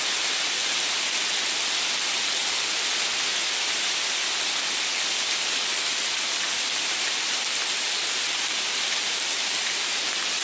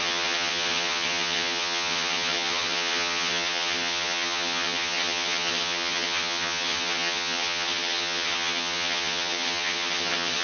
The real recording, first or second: first